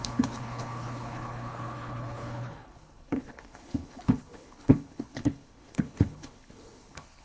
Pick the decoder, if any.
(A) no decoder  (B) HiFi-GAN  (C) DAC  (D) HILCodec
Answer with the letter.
D